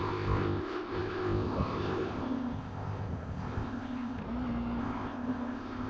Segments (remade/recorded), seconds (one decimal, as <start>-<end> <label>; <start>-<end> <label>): 0.0-4.2 remade; 4.2-4.8 recorded; 4.8-5.9 remade